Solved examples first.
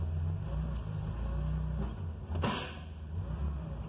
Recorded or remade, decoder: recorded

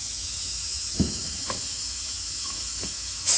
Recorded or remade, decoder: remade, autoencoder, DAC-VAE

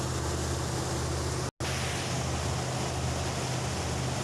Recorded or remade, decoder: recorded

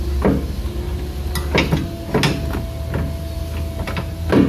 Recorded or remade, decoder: recorded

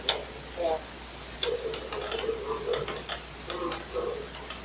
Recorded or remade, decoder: recorded